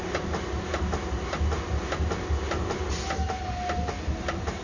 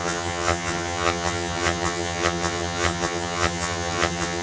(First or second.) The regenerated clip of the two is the second